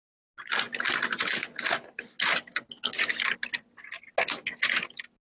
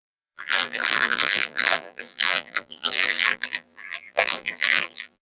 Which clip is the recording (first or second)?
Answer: first